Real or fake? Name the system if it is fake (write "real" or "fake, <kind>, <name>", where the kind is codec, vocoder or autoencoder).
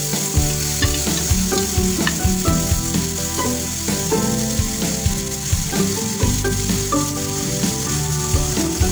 real